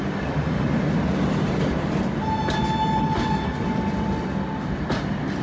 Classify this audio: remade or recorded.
recorded